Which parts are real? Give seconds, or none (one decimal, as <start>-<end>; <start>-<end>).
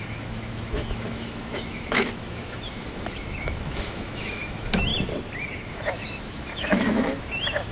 4.9-5.7